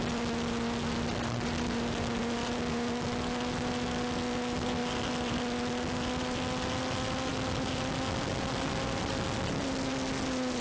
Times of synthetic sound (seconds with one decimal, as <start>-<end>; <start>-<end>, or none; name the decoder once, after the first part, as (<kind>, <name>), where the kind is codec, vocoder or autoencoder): none